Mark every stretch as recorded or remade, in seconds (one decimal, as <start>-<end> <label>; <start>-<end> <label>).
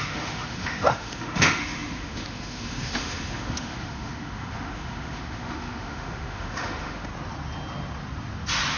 0.0-7.1 remade; 7.1-8.8 recorded